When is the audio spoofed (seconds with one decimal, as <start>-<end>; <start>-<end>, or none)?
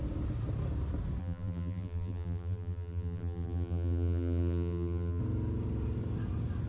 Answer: 1.2-5.2